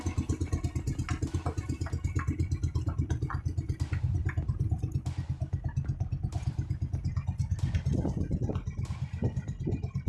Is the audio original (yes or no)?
yes